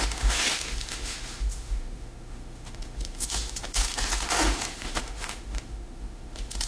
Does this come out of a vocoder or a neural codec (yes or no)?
yes